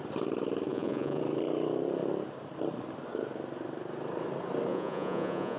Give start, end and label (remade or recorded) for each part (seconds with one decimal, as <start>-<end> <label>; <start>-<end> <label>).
0.0-0.7 recorded; 0.7-1.2 remade; 1.2-4.7 recorded; 4.7-5.6 remade